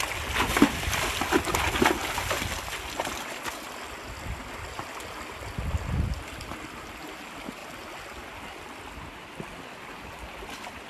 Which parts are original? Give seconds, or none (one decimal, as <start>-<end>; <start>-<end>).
0.0-10.9